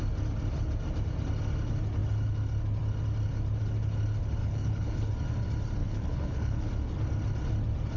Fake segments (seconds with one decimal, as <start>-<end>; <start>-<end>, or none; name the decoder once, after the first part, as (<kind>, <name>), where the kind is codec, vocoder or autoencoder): 4.4-5.1 (codec, HILCodec); 5.8-6.7